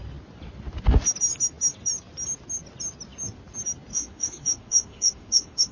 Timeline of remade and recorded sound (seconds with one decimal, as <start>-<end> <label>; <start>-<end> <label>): 0.0-3.9 recorded; 3.9-5.7 remade